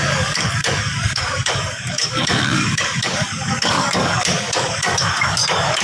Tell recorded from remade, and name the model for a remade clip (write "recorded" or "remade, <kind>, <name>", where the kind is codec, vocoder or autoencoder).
remade, codec, DAC